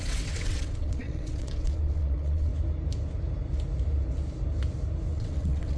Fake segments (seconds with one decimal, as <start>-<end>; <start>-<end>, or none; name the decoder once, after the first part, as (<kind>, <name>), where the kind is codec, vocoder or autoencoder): 0.0-2.5 (vocoder, WaveNeXt); 5.1-5.8